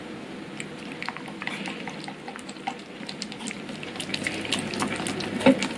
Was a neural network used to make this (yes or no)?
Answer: no